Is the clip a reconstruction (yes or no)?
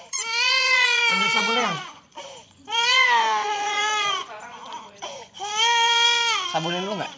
yes